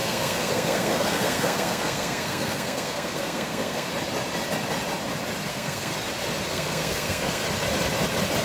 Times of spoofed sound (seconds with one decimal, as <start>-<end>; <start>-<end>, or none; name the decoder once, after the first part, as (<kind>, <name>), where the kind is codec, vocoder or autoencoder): 0.0-3.9 (codec, SNAC); 5.5-5.9; 6.5-7.4